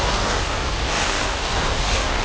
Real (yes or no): no